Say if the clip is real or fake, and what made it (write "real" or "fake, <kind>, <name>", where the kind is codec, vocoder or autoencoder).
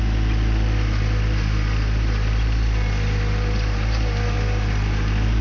real